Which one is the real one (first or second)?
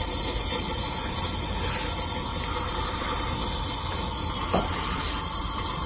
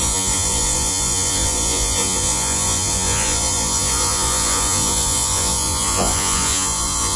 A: first